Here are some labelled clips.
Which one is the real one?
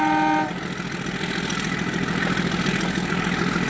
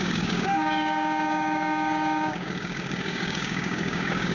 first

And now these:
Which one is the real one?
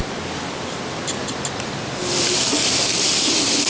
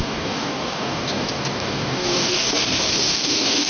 first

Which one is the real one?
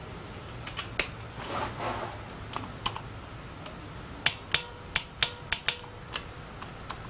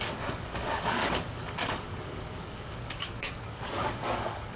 first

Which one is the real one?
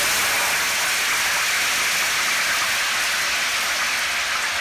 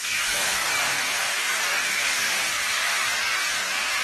first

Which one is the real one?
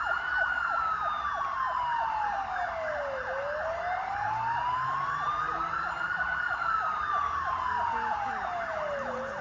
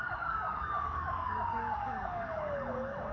first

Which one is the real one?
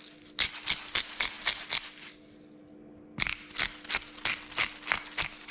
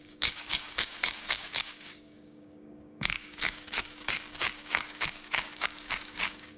first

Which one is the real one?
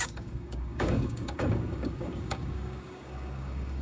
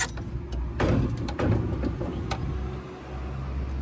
second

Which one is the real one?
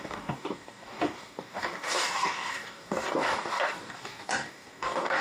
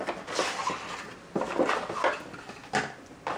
second